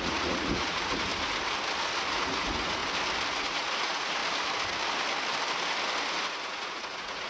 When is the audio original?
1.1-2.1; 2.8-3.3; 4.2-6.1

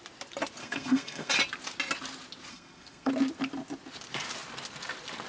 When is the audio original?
0.0-0.6; 1.3-2.5; 3.1-5.3

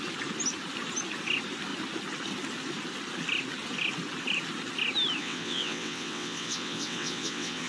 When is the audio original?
0.0-5.2

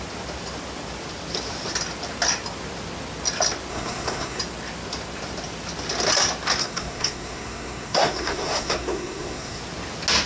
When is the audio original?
0.0-3.7; 4.4-6.6; 9.6-10.3

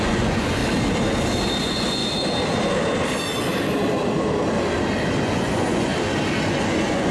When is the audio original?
0.6-1.6; 2.0-5.2; 5.9-6.5

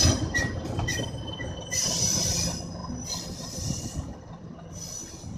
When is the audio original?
0.0-2.8; 4.5-5.4